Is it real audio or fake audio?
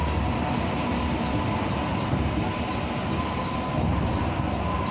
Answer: real